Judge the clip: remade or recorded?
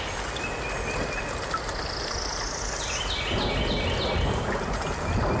recorded